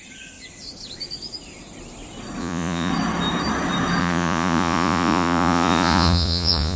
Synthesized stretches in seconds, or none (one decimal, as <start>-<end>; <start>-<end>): 2.4-2.9; 4.0-6.8